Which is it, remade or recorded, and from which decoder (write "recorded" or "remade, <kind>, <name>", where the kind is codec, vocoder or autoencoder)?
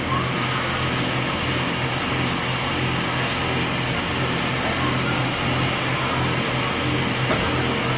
recorded